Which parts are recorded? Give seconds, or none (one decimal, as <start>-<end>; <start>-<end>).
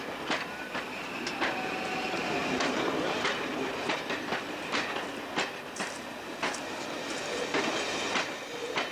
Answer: 0.0-8.9